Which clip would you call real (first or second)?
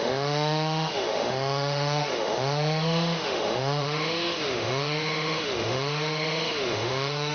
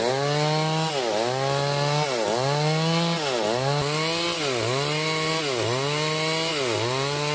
second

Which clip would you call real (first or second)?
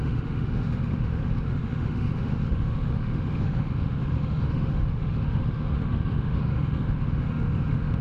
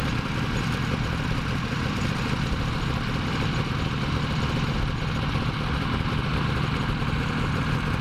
second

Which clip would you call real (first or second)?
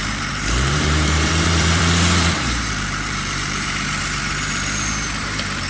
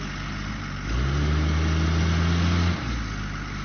second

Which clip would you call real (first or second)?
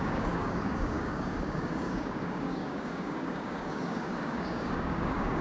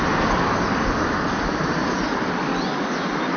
second